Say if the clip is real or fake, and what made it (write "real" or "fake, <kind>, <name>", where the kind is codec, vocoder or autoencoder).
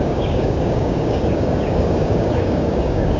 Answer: fake, codec, DAC